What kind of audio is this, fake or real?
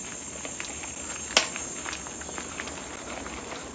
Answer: real